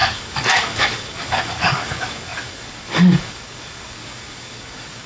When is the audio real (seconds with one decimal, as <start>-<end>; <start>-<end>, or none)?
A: none